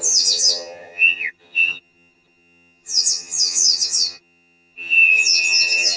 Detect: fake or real fake